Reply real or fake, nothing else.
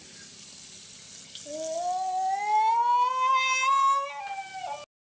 real